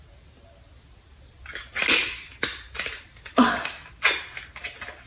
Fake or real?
real